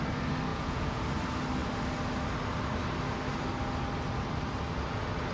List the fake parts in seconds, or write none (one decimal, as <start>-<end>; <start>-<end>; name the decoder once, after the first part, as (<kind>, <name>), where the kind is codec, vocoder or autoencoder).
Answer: 0.5-1.0 (vocoder, Vocos)